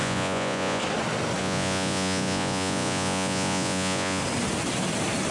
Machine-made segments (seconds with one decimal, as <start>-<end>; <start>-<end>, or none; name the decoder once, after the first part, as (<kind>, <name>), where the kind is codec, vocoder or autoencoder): 0.0-0.8 (vocoder, Vocos); 1.4-4.2